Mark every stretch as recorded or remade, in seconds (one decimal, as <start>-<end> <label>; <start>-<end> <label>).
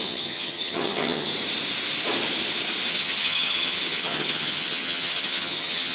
0.0-1.3 remade; 1.3-2.9 recorded; 2.9-5.9 remade